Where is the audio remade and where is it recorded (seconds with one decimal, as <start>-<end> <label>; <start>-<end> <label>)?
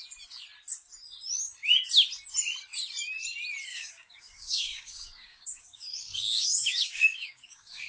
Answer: 0.0-3.7 recorded; 3.7-7.9 remade